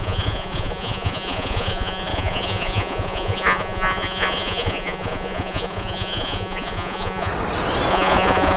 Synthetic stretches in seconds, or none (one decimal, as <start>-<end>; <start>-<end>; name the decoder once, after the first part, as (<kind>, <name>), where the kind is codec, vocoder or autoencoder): 0.0-7.3 (vocoder, Vocos); 7.9-8.6